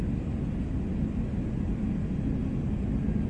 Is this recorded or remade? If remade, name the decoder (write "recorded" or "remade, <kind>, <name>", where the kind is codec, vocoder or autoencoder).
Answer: recorded